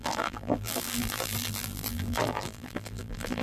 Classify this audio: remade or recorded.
remade